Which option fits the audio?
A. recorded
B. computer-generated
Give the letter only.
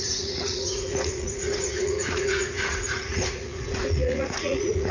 B